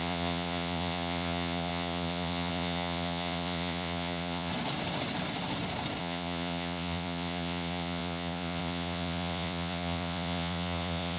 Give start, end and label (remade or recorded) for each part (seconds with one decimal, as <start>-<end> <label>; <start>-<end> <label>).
0.0-4.5 remade; 4.5-6.0 recorded; 6.0-11.2 remade